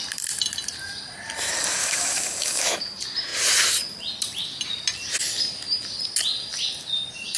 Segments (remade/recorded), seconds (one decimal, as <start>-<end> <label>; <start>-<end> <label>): 0.0-1.8 recorded; 1.8-2.8 remade; 2.8-7.4 recorded